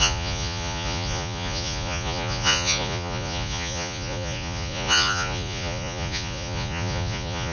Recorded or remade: remade